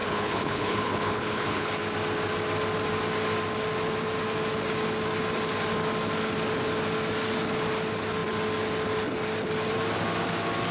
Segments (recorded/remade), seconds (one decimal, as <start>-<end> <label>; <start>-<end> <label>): 0.0-1.7 remade; 1.7-10.7 recorded